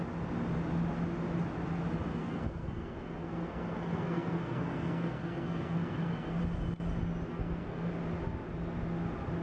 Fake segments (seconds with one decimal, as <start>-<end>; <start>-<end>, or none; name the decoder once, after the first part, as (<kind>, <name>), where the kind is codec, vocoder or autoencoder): 2.2-6.4 (codec, SNAC); 7.3-7.9